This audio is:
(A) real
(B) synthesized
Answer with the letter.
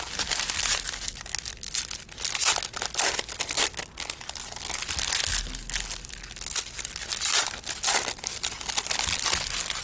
A